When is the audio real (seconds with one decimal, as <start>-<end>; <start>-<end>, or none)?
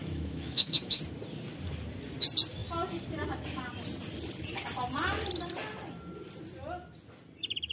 1.0-7.7